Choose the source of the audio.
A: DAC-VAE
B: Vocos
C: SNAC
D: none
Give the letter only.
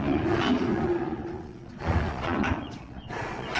B